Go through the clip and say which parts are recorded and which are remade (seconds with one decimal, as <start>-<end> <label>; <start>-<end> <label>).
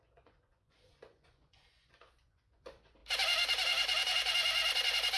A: 0.0-3.0 remade; 3.0-5.2 recorded